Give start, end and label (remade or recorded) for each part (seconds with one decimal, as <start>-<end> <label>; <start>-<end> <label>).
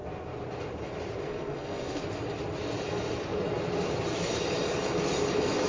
0.0-1.2 recorded; 1.2-2.0 remade; 2.0-5.7 recorded